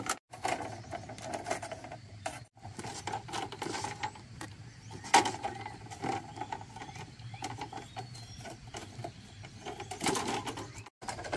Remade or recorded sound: recorded